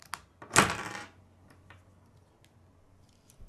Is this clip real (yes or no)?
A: yes